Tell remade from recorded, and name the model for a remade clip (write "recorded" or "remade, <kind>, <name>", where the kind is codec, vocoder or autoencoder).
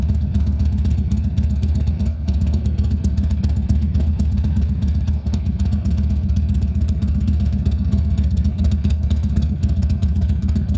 remade, codec, SNAC